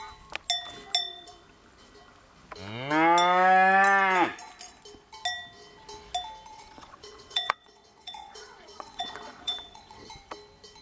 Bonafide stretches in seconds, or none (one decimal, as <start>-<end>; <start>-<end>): 0.0-6.5; 10.1-10.8